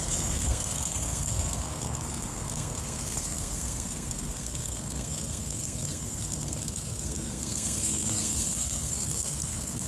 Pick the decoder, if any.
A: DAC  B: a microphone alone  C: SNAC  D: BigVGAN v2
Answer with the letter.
C